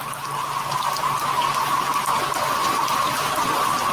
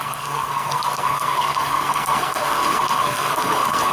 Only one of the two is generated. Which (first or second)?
second